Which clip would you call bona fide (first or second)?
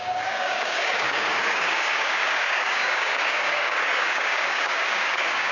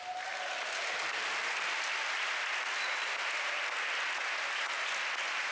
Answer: second